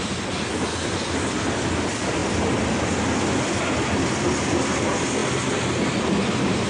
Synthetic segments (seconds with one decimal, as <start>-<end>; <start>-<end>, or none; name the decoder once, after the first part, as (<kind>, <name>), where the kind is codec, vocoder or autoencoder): none